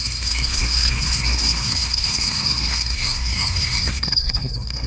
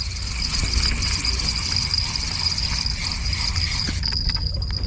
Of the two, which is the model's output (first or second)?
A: first